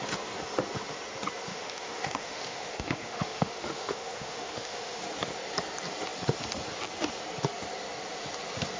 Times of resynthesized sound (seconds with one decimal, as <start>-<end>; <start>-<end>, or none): 1.5-5.0